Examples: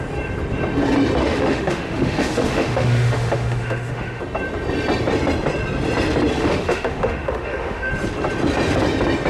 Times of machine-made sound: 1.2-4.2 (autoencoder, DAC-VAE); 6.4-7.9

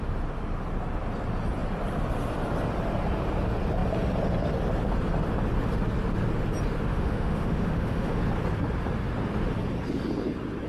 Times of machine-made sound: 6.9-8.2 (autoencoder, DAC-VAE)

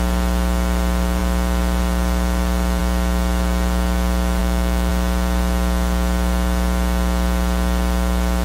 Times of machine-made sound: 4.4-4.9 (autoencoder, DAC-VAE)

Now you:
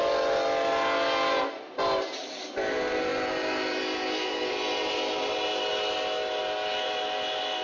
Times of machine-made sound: none

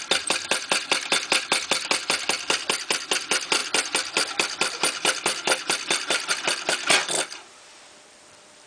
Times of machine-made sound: none